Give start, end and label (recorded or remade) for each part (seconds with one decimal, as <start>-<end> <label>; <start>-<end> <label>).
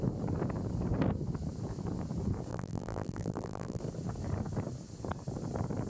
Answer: 0.0-2.5 recorded; 2.5-3.8 remade; 3.8-5.9 recorded